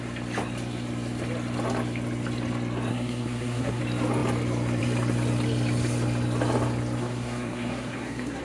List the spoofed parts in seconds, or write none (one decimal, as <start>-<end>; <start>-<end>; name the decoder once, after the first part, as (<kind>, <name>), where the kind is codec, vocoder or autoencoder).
2.9-3.8 (codec, SNAC); 7.0-8.4

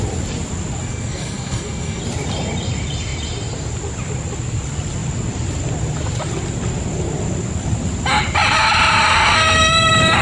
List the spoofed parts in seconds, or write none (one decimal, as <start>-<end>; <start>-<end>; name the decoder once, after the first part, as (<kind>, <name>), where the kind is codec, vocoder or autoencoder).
0.8-2.0 (codec, SNAC)

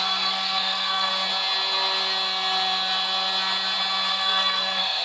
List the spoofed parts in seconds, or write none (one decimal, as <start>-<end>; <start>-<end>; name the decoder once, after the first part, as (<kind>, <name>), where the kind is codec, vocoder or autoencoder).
0.0-1.1 (codec, SNAC); 4.1-5.0

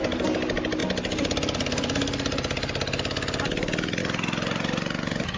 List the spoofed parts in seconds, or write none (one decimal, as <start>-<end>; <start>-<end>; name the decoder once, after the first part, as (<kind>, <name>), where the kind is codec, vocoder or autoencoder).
none

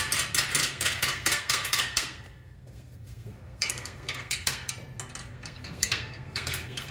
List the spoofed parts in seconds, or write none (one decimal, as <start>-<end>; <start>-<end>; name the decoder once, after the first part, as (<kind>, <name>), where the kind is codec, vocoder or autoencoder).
0.6-4.7 (codec, SNAC); 5.2-6.9

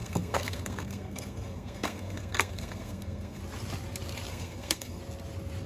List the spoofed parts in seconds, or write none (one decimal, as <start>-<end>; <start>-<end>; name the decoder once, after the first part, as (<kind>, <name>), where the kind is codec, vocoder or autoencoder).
0.0-3.4 (codec, SNAC); 4.3-5.0

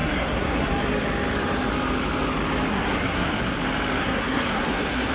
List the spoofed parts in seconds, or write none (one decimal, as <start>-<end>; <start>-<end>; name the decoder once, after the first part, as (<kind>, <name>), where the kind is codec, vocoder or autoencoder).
0.0-0.7 (codec, SNAC); 2.7-3.6; 4.0-5.1